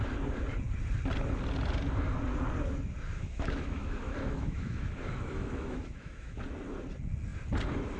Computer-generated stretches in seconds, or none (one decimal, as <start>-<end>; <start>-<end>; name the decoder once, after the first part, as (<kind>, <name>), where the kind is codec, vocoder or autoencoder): 3.1-6.4 (autoencoder, DAC-VAE)